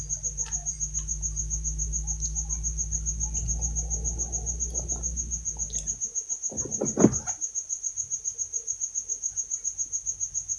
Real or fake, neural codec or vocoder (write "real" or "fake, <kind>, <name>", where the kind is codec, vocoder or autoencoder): real